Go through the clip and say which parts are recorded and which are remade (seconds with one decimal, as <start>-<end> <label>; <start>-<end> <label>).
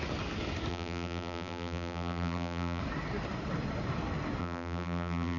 0.0-0.7 recorded; 0.7-2.8 remade; 2.8-4.4 recorded; 4.4-5.4 remade